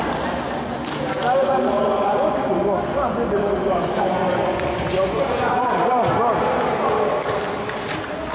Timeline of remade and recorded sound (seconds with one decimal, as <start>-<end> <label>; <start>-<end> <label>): 0.0-1.4 recorded; 1.4-2.6 remade; 2.6-3.6 recorded; 3.6-5.8 remade; 5.8-8.3 recorded